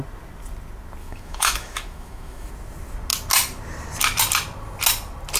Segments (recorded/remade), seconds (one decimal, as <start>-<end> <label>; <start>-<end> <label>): 0.0-1.0 recorded; 1.0-2.5 remade; 2.5-5.4 recorded